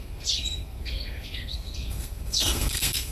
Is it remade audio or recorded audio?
remade